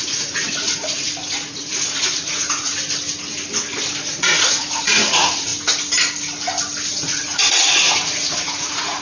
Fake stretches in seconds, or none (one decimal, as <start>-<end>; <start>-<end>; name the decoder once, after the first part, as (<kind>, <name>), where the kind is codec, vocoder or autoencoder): 0.0-2.7 (vocoder, Vocos); 4.0-5.5; 6.9-9.0